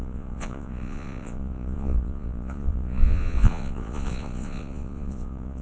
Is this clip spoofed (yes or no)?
yes